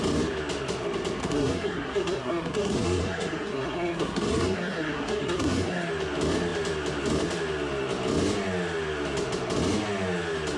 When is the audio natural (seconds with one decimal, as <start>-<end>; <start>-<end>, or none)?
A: 0.0-1.2; 5.9-10.6